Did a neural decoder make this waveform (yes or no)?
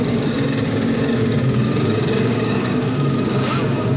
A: yes